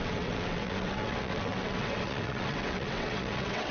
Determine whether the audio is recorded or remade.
remade